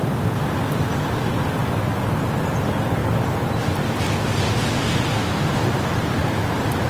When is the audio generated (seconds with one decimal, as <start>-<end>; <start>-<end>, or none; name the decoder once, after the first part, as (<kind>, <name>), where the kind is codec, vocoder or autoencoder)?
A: 6.2-6.9 (vocoder, BigVGAN v2)